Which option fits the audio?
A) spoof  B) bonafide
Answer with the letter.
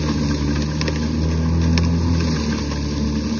B